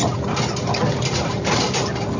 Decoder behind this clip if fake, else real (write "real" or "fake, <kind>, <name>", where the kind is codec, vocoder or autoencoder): real